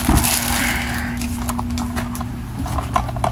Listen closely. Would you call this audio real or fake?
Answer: real